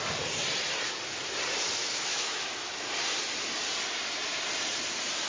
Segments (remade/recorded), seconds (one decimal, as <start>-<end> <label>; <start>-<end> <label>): 0.0-1.8 recorded; 1.8-2.7 remade; 2.7-5.3 recorded